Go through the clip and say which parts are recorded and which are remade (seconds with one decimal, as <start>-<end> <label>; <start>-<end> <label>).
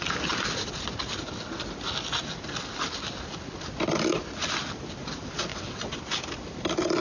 0.0-5.5 recorded; 5.5-6.0 remade; 6.0-7.0 recorded